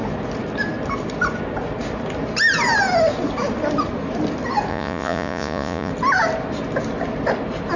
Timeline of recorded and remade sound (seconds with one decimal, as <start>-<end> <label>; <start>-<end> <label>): 0.0-4.7 recorded; 4.7-5.9 remade; 5.9-7.8 recorded